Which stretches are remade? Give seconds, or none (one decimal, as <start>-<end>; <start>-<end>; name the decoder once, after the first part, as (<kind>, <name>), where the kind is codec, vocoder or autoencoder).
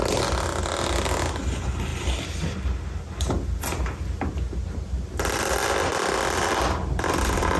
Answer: none